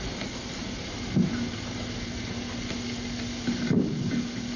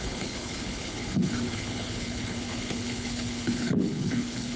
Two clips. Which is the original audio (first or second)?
first